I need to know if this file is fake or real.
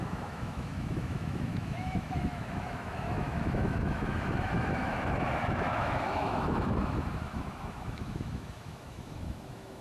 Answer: fake